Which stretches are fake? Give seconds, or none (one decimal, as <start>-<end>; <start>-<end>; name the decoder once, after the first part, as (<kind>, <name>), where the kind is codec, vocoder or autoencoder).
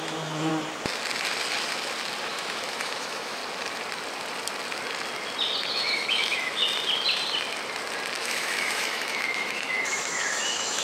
0.0-0.5 (autoencoder, DAC-VAE); 2.3-3.4; 5.7-6.6; 8.2-10.8